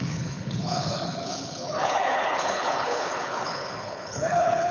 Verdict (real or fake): fake